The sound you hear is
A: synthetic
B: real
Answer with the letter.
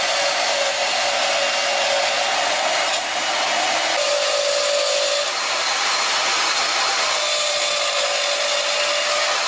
B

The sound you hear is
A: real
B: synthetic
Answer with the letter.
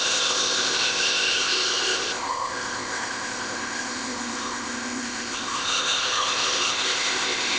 B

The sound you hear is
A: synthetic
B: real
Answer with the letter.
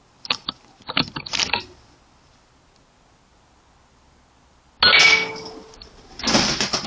B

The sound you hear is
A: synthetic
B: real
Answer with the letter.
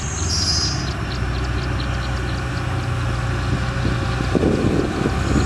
B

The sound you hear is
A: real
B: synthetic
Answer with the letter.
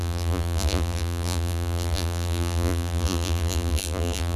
B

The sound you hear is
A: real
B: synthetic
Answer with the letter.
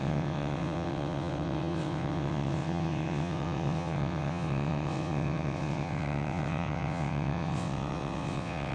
B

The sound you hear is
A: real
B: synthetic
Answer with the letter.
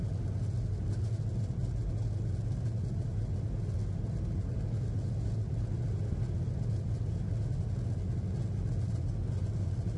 A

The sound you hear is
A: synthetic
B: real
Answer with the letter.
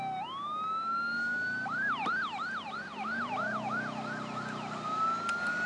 B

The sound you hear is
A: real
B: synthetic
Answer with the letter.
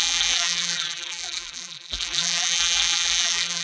B